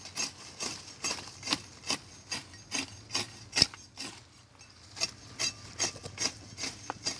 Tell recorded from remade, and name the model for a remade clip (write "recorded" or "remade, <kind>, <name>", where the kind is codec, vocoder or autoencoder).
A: recorded